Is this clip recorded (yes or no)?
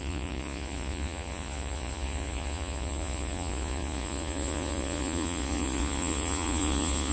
no